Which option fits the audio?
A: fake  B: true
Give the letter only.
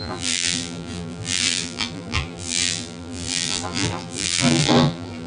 A